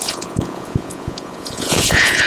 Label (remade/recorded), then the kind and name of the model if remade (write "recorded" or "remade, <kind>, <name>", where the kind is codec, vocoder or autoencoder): remade, vocoder, Vocos